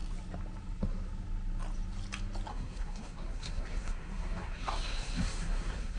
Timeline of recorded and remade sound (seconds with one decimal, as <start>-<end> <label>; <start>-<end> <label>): 0.0-2.5 recorded; 2.5-6.0 remade